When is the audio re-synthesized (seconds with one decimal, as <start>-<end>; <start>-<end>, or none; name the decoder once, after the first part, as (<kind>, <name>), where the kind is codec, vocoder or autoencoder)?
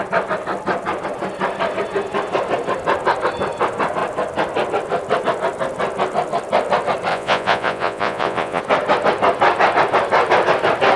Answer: 7.1-8.6 (vocoder, Vocos)